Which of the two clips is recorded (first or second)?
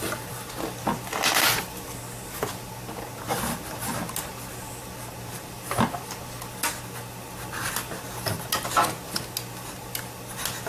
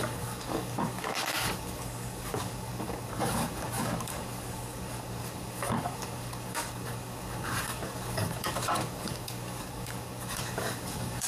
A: first